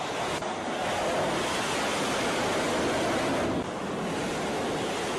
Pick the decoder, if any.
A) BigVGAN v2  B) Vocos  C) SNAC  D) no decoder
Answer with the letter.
D